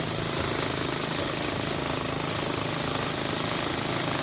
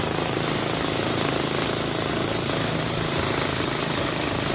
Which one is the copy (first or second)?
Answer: second